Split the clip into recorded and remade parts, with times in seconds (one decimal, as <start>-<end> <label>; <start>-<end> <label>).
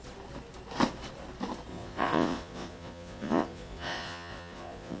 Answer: 0.0-1.7 recorded; 1.7-5.0 remade